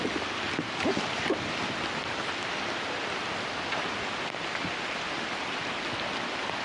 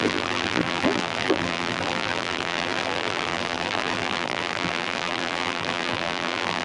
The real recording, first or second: first